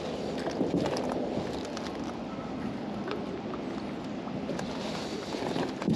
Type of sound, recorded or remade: recorded